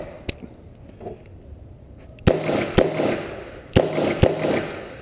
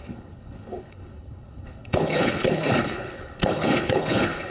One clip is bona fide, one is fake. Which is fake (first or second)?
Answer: second